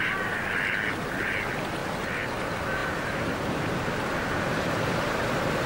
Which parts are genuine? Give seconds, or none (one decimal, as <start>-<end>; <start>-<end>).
0.0-1.8; 2.4-2.8; 4.7-5.7